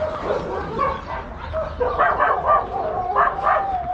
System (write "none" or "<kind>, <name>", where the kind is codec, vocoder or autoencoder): none